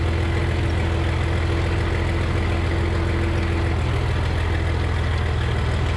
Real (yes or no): yes